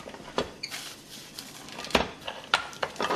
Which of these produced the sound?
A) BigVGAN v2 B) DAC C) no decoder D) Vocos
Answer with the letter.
A